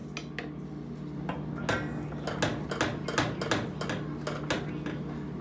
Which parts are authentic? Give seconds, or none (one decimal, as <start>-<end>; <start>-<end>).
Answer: 0.0-5.4